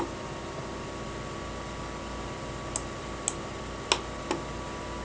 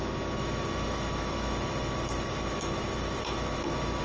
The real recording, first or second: first